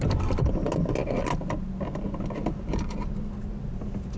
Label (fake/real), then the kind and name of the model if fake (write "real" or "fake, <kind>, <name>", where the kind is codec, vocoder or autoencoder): real